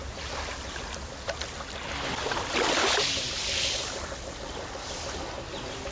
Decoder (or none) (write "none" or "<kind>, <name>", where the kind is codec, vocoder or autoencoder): none